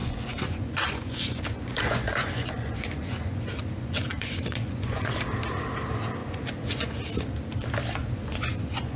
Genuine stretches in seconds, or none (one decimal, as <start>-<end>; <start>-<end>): 5.1-6.2; 7.0-8.0